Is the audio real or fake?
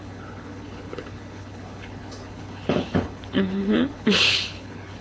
fake